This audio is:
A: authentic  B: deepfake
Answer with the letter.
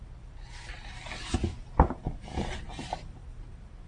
A